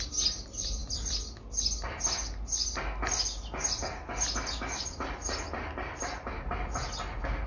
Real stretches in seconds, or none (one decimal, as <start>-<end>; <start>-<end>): 0.0-7.5